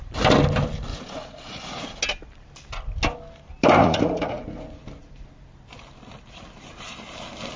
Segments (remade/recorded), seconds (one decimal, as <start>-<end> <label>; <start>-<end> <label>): 0.0-0.9 recorded; 0.9-2.0 remade; 2.0-3.8 recorded; 3.8-4.4 remade; 4.4-7.6 recorded